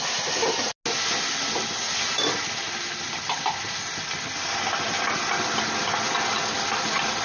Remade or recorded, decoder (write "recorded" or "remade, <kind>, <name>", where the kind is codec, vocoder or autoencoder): recorded